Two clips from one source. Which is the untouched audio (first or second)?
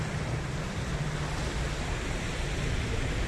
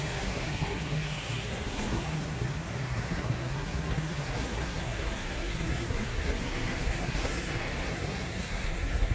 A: first